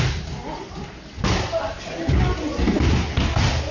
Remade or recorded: recorded